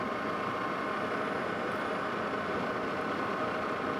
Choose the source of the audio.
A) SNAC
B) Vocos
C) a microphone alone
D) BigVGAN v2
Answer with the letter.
C